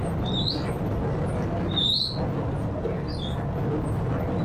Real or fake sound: real